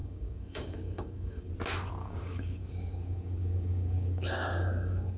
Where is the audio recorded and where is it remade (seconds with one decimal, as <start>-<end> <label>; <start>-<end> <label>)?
0.0-1.5 remade; 1.5-2.0 recorded; 2.0-5.2 remade